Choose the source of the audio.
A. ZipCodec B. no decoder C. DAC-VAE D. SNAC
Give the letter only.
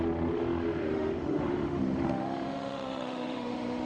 C